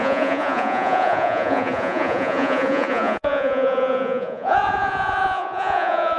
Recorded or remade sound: remade